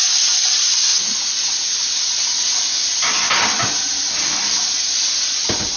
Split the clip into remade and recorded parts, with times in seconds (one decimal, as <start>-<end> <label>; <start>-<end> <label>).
0.0-5.8 recorded